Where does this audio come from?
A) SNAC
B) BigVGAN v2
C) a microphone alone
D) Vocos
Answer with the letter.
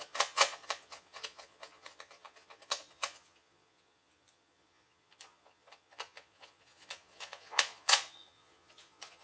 D